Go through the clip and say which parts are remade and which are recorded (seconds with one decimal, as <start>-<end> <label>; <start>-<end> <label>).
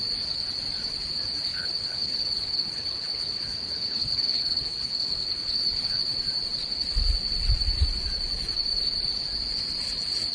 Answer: 0.0-1.5 recorded; 1.5-6.0 remade; 6.0-10.3 recorded